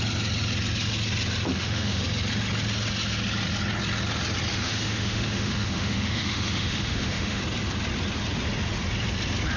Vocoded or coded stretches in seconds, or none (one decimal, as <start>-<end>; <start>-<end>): 1.5-2.0; 4.5-7.4